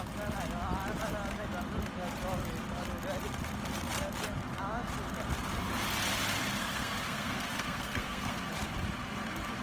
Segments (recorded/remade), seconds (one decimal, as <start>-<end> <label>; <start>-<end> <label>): 0.0-6.6 recorded; 6.6-8.4 remade; 8.4-9.6 recorded